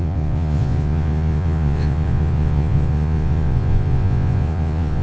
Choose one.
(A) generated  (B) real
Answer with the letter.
A